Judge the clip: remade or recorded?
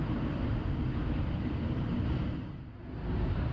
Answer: remade